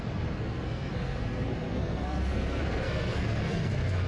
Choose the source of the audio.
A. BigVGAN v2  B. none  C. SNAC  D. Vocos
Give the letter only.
C